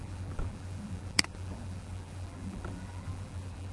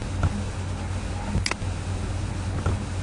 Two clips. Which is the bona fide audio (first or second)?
second